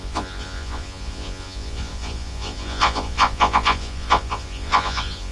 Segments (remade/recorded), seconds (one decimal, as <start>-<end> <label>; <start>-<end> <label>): 0.0-5.3 remade

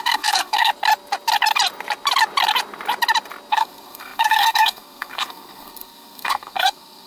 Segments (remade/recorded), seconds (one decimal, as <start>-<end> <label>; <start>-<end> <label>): 0.0-0.7 remade; 0.7-3.5 recorded; 3.5-7.1 remade

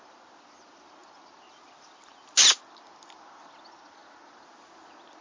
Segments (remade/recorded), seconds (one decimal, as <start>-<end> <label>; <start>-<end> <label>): 0.0-5.2 recorded

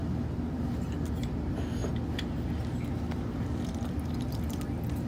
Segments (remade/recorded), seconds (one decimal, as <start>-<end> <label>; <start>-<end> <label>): 0.0-5.1 recorded

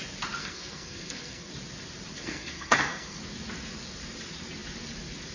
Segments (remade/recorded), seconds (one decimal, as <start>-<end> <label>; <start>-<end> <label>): 0.0-0.4 recorded; 0.4-1.5 remade; 1.5-2.1 recorded; 2.1-3.2 remade; 3.2-5.3 recorded